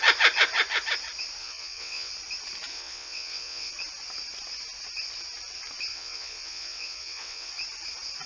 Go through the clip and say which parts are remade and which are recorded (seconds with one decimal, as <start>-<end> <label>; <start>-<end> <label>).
0.0-1.4 recorded; 1.4-2.1 remade; 2.1-2.7 recorded; 2.7-3.7 remade; 3.7-5.9 recorded; 5.9-7.5 remade; 7.5-8.3 recorded